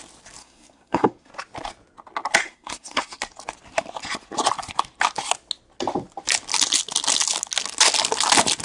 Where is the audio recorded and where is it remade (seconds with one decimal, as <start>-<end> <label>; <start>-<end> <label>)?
0.0-0.4 recorded; 0.4-1.3 remade; 1.3-2.4 recorded; 2.4-3.2 remade; 3.2-8.6 recorded